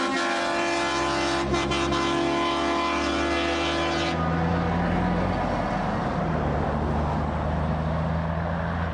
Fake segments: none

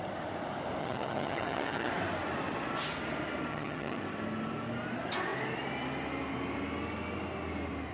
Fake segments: 0.8-1.9 (vocoder, HiFi-GAN); 3.5-4.0

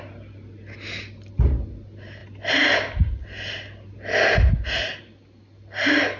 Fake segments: none

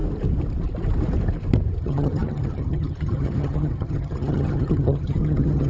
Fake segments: 1.8-5.7 (vocoder, HiFi-GAN)